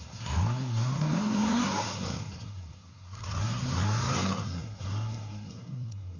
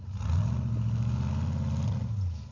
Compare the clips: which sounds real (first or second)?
second